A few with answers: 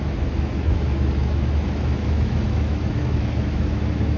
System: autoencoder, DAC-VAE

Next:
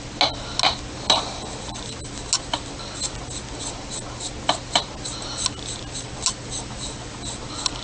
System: none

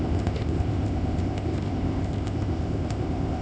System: codec, ZipCodec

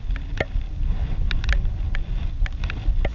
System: none